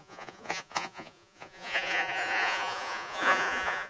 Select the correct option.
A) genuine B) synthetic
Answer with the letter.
B